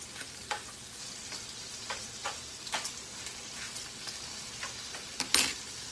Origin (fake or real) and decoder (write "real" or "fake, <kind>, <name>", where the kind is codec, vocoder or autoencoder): real